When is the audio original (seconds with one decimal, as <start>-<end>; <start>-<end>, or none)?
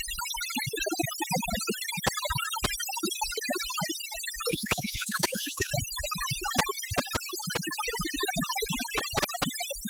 0.0-4.5; 5.7-9.9